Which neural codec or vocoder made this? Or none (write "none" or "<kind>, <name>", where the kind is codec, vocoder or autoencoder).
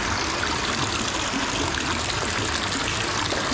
none